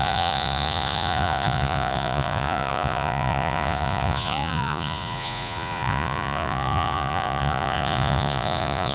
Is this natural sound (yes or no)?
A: no